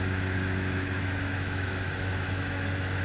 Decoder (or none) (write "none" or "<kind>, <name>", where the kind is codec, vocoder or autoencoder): autoencoder, DAC-VAE